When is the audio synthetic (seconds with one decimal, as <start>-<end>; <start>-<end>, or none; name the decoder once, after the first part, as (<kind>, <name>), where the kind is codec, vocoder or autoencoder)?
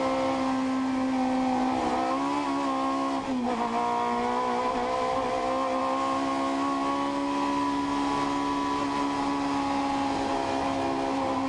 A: none